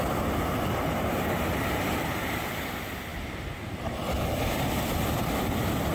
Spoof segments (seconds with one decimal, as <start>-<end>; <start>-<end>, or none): none